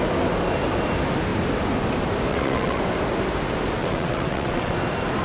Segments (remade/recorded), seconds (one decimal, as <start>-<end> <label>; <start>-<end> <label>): 0.0-2.3 recorded; 2.3-2.8 remade; 2.8-3.8 recorded; 3.8-4.7 remade; 4.7-5.2 recorded